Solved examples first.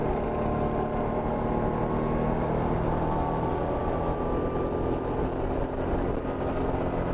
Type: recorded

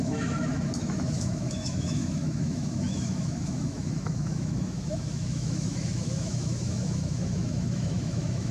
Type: remade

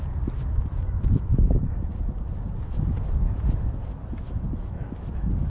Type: recorded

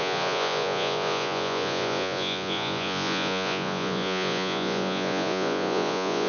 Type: remade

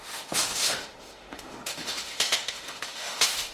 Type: remade